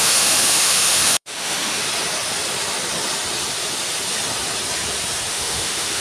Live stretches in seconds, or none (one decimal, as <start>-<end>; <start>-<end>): 1.8-5.3